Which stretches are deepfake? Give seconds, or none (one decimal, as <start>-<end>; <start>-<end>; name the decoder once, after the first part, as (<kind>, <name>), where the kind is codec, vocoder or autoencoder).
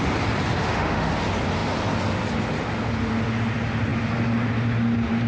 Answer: 0.6-1.1 (autoencoder, DAC-VAE)